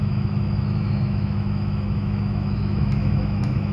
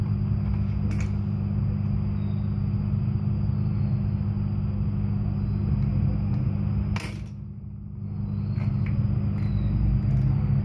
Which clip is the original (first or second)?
second